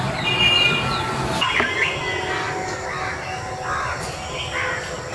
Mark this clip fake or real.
real